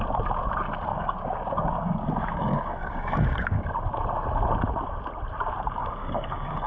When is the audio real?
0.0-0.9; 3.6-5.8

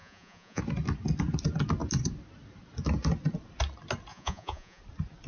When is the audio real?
0.6-4.1; 4.8-5.3

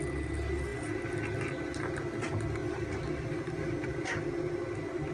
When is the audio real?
0.0-5.1

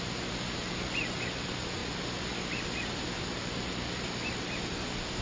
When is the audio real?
0.0-5.2